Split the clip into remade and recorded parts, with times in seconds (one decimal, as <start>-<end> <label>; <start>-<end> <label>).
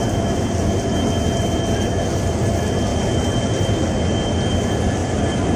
0.0-2.9 recorded; 2.9-3.9 remade; 3.9-5.0 recorded; 5.0-5.6 remade